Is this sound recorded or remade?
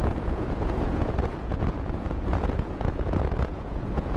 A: remade